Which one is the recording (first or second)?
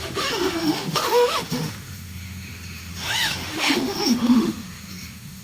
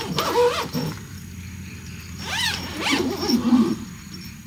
second